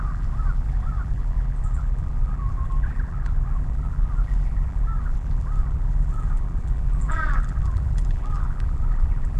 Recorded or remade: remade